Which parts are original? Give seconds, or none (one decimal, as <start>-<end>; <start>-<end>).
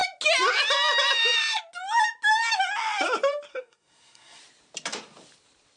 0.0-3.5; 4.4-5.8